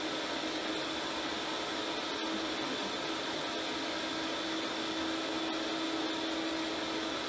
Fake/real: real